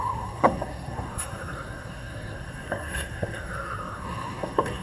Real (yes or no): no